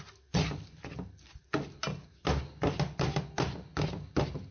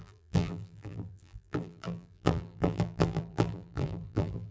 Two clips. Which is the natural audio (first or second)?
first